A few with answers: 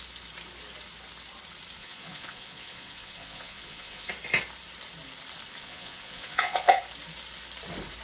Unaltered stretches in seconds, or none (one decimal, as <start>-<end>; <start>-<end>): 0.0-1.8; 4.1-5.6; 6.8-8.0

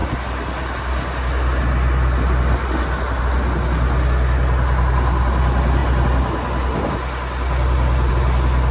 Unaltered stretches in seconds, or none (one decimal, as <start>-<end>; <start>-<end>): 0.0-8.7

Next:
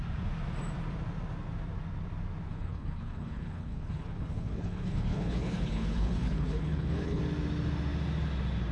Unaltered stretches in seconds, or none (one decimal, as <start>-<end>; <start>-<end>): 0.0-2.5; 7.2-8.7

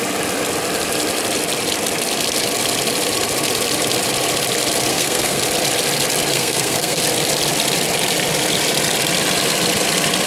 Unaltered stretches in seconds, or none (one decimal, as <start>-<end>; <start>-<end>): 0.0-4.9; 5.4-6.3; 7.0-10.3

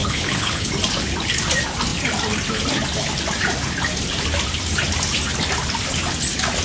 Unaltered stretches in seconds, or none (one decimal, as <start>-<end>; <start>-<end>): 0.7-6.6

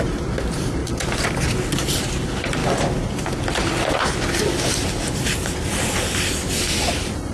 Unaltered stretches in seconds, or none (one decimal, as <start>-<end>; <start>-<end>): 0.8-1.7; 2.6-5.1

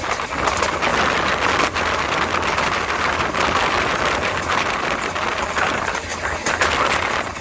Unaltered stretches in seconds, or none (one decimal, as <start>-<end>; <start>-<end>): 0.0-7.4